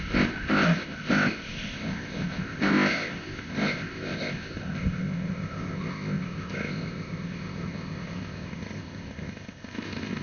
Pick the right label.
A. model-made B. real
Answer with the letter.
A